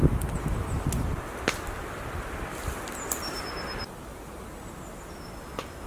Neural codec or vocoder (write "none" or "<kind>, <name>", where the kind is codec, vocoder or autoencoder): none